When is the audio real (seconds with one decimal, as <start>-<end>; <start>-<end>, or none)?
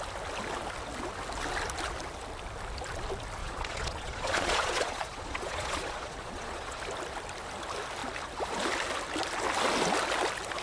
0.0-3.4; 6.8-10.6